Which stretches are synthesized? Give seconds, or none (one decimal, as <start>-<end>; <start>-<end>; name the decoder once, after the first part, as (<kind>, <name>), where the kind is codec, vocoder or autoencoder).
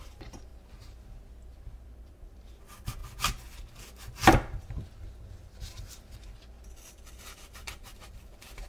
0.0-0.5 (vocoder, BigVGAN v2); 1.5-3.0; 5.5-8.7